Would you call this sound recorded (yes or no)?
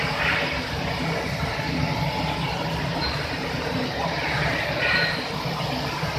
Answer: yes